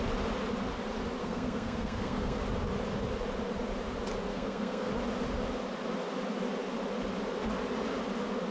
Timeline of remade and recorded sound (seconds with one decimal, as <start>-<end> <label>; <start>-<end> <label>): 0.0-1.2 recorded; 1.2-2.4 remade; 2.4-4.3 recorded; 4.3-4.9 remade; 4.9-8.5 recorded

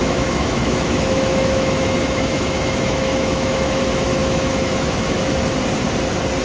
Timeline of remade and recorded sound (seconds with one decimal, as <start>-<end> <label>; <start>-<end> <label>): 0.0-3.8 remade; 3.8-4.2 recorded; 4.2-5.3 remade; 5.3-6.4 recorded

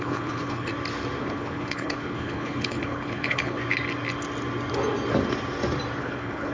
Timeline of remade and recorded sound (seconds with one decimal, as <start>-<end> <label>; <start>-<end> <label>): 0.0-0.7 remade; 0.7-1.2 recorded; 1.2-3.6 remade; 3.6-6.0 recorded; 6.0-6.5 remade

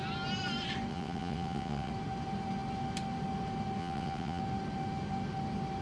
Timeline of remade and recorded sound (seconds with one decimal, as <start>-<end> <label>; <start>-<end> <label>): 0.0-0.9 recorded; 0.9-1.9 remade; 1.9-3.8 recorded; 3.8-4.4 remade; 4.4-5.8 recorded

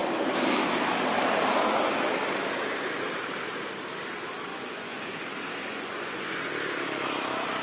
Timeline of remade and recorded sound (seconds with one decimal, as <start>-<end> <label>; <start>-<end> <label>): 0.0-4.5 recorded; 4.5-5.2 remade; 5.2-5.7 recorded; 5.7-6.5 remade; 6.5-7.6 recorded